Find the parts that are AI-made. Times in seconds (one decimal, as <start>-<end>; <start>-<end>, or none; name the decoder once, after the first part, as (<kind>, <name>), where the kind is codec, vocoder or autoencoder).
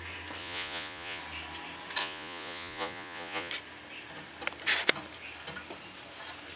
0.4-1.2 (vocoder, Vocos); 2.0-3.5